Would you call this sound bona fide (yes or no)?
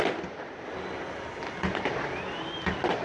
yes